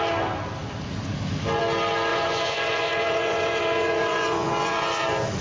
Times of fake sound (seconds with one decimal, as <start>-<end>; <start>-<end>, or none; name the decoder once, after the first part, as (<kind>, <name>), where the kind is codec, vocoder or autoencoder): 2.1-5.4 (vocoder, Vocos)